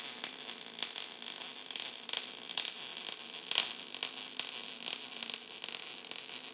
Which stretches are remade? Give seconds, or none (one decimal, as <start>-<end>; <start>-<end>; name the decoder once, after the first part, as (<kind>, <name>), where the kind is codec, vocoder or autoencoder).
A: none